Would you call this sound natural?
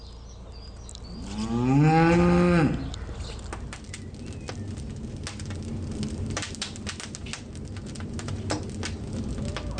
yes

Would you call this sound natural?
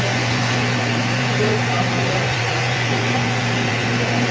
no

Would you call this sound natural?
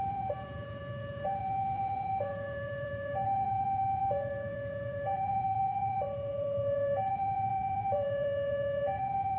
no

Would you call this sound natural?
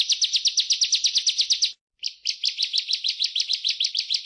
yes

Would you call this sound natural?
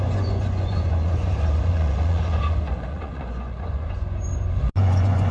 no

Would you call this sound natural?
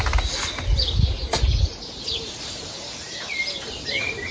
yes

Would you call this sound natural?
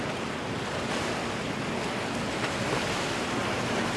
yes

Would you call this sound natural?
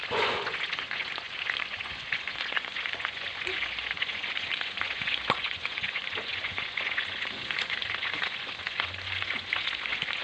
no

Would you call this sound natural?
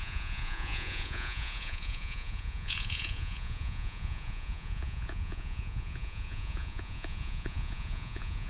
no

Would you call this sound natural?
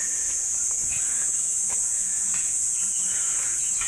no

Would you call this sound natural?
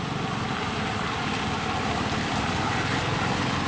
yes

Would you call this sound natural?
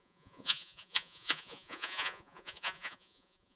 no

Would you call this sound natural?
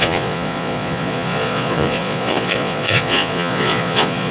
no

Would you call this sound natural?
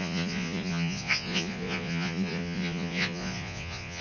no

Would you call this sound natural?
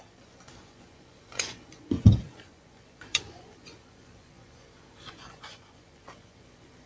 no